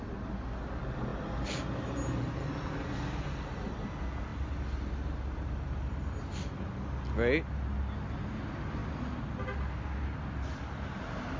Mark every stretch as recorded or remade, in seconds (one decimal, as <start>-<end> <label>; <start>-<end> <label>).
0.0-11.4 recorded